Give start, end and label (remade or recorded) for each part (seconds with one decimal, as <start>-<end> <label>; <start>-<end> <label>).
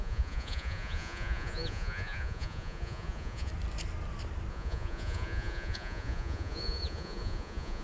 0.0-3.5 remade; 3.5-4.5 recorded; 4.5-7.8 remade